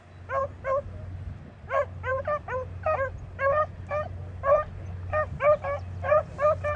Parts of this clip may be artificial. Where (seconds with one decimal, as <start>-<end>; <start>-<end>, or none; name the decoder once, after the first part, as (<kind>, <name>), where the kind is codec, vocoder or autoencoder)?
none